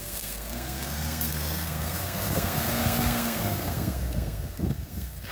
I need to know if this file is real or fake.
fake